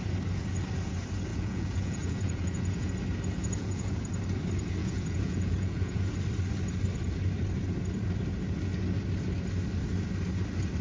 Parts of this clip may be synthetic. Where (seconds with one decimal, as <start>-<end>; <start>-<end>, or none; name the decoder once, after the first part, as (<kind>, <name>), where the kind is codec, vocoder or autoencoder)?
1.3-2.9 (vocoder, Vocos); 3.4-4.0; 4.8-6.1